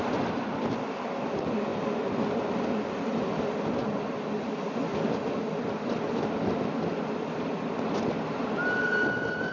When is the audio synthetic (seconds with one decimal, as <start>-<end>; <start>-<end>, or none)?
none